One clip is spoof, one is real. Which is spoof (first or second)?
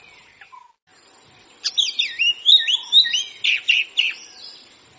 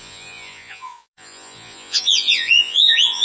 second